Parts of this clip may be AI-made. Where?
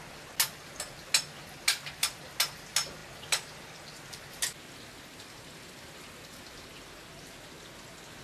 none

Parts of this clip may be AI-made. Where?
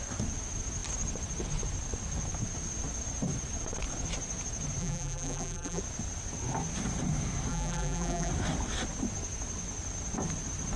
4.8-5.8 (vocoder, BigVGAN v2); 7.5-8.3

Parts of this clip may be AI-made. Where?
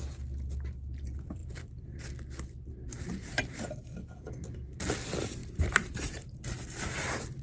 1.4-2.0 (vocoder, BigVGAN v2); 2.9-3.7; 5.4-6.4